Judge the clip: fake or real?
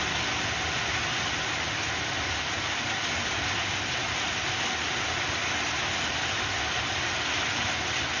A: real